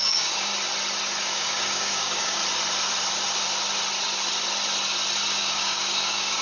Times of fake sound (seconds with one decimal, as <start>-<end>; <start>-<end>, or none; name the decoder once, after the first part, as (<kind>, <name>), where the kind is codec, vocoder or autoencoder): 0.0-0.5 (codec, DAC); 1.2-2.4; 5.4-6.4